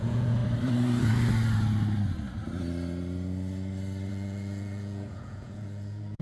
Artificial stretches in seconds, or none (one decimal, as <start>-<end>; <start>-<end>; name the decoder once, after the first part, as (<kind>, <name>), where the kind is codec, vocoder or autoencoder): 0.0-0.4 (vocoder, Vocos); 4.1-6.2